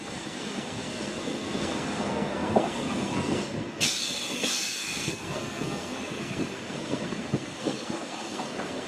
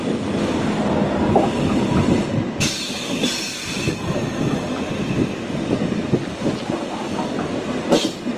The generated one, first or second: first